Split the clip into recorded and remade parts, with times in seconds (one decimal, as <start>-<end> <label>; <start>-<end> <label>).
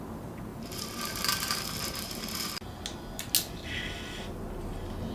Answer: 0.0-0.5 recorded; 0.5-2.5 remade; 2.5-5.1 recorded